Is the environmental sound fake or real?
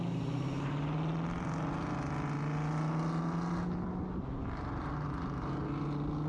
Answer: real